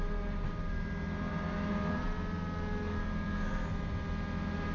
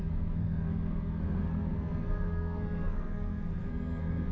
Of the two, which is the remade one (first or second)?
second